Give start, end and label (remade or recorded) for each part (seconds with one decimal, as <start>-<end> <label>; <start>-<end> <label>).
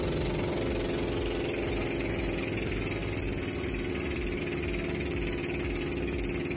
0.0-3.0 recorded; 3.0-4.4 remade; 4.4-6.6 recorded